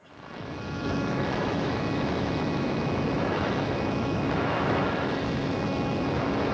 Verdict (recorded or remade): remade